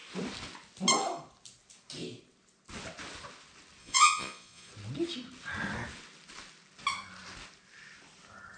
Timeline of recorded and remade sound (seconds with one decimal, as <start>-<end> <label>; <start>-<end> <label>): 0.0-3.8 recorded; 3.8-4.7 remade; 4.7-8.6 recorded